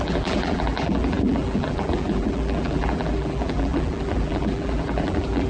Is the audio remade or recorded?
remade